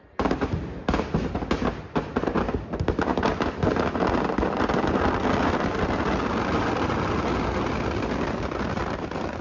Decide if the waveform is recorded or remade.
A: recorded